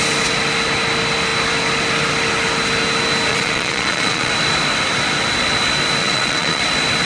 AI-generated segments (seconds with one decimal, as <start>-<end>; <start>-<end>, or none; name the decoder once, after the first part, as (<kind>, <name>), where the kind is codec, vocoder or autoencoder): 3.3-4.3 (vocoder, Vocos); 6.0-6.6